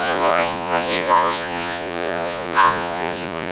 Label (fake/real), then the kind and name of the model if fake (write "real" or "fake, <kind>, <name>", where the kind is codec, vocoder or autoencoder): fake, vocoder, Vocos